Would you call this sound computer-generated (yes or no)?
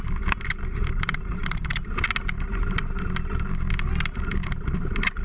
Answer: no